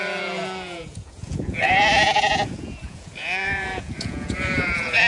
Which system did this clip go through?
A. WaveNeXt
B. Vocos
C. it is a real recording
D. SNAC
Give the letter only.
B